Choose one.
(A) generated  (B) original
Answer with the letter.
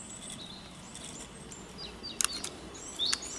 B